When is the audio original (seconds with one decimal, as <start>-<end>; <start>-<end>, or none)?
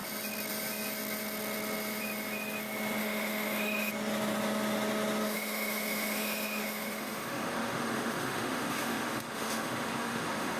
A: 0.0-3.0; 3.9-5.2